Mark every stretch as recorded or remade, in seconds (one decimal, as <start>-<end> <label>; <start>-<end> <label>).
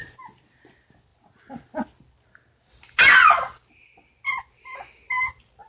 0.0-5.7 recorded